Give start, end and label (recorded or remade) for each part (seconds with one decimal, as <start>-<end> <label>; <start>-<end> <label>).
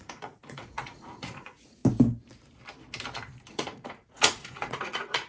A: 0.0-1.8 remade; 1.8-3.5 recorded; 3.5-5.3 remade